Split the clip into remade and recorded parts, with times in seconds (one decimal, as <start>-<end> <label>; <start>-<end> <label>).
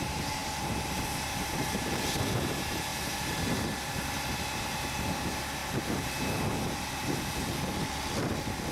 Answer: 0.0-5.6 remade; 5.6-8.7 recorded